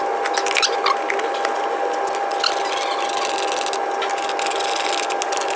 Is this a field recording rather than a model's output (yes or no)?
yes